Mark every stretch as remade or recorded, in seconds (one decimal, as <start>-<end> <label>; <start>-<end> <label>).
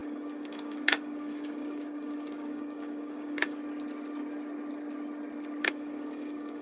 0.0-3.6 remade; 3.6-5.6 recorded; 5.6-6.6 remade